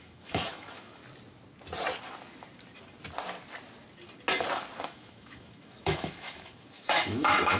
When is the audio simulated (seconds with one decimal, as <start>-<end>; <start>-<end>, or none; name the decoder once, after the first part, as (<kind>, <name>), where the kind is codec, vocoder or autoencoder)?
0.0-1.0 (autoencoder, DAC-VAE); 4.9-7.6